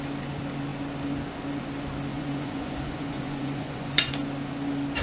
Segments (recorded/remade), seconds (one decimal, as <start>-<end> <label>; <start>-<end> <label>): 0.0-2.1 recorded; 2.1-4.1 remade; 4.1-5.0 recorded